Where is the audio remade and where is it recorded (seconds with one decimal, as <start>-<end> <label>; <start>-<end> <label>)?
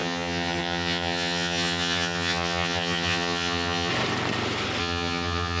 0.0-3.9 remade; 3.9-4.8 recorded; 4.8-5.6 remade